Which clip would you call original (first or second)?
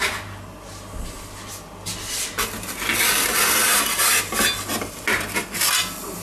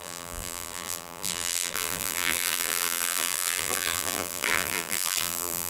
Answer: first